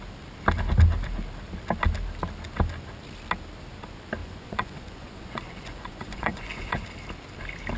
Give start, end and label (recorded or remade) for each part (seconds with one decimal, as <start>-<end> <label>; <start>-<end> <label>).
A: 0.0-4.2 recorded; 4.2-6.8 remade; 6.8-7.8 recorded